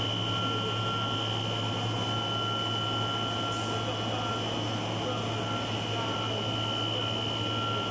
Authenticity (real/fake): real